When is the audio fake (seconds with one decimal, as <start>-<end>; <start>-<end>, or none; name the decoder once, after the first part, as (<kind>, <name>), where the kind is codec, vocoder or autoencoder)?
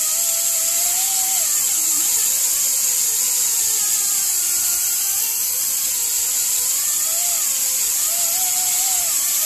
none